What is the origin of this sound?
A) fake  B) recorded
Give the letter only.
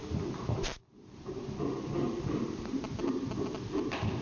B